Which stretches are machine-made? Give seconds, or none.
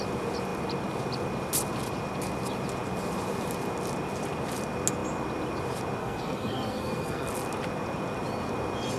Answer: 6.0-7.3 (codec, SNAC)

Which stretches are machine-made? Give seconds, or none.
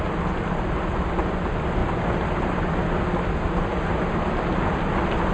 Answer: none